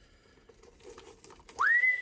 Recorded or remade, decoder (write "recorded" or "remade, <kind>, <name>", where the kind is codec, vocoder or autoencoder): remade, vocoder, BigVGAN v2